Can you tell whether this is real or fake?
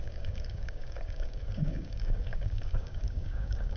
fake